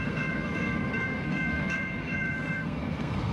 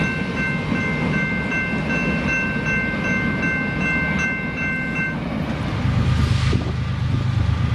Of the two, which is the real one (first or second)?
second